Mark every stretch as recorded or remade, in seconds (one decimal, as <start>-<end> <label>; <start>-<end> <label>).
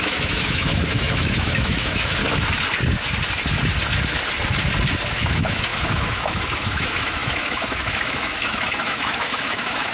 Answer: 0.0-2.2 remade; 2.2-5.1 recorded; 5.1-9.9 remade